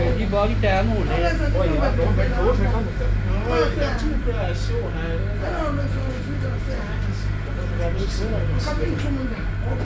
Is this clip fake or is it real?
real